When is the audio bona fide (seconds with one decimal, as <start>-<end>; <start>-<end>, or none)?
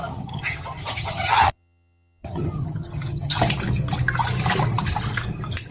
3.4-5.7